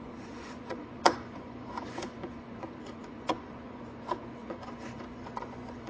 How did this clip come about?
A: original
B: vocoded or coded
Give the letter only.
B